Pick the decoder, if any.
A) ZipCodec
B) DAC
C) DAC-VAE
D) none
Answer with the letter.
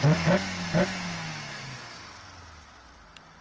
D